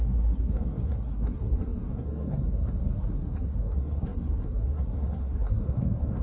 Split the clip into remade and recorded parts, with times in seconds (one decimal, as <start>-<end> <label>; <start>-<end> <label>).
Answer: 0.0-6.2 remade

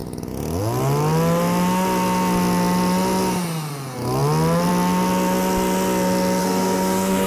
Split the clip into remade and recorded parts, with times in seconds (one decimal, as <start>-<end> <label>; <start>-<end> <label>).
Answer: 0.0-6.4 recorded; 6.4-7.3 remade

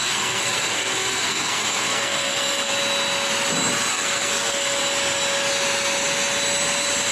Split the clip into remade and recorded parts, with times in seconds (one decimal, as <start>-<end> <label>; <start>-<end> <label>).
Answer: 0.0-2.7 remade; 2.7-3.9 recorded; 3.9-4.8 remade; 4.8-7.1 recorded

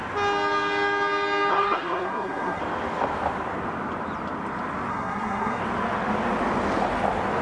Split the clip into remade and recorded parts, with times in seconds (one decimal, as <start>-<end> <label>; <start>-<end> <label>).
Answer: 0.0-1.5 recorded; 1.5-2.6 remade; 2.6-4.9 recorded; 4.9-5.6 remade; 5.6-7.4 recorded

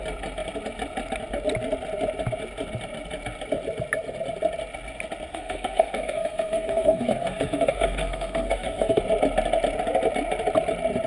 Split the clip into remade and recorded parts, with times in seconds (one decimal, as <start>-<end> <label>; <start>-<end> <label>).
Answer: 0.0-5.3 recorded; 5.3-9.0 remade; 9.0-11.1 recorded

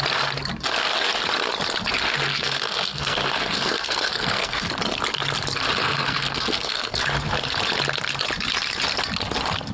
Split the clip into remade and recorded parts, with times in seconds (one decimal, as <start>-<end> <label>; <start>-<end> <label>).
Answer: 0.0-2.3 recorded; 2.3-4.7 remade; 4.7-5.8 recorded; 5.8-7.0 remade; 7.0-9.7 recorded

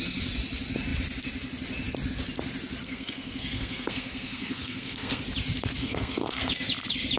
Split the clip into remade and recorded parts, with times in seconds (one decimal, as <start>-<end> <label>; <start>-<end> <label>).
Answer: 0.0-2.8 recorded; 2.8-5.2 remade; 5.2-5.8 recorded; 5.8-6.5 remade; 6.5-7.2 recorded

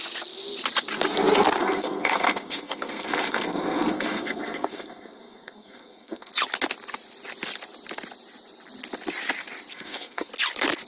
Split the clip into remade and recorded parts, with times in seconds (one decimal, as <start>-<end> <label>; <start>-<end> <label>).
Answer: 0.0-1.6 recorded; 1.6-6.3 remade; 6.3-9.7 recorded; 9.7-10.3 remade; 10.3-10.9 recorded